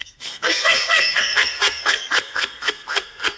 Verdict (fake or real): fake